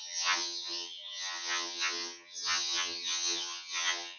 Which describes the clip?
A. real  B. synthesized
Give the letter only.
B